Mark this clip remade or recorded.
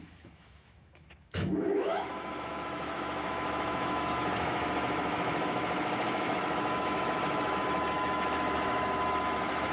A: remade